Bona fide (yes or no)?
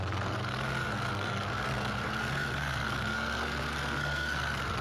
no